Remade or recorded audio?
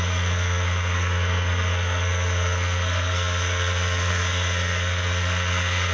remade